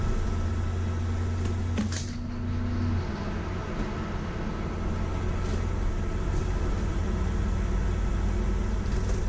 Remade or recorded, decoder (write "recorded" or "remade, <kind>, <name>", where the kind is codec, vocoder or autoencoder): recorded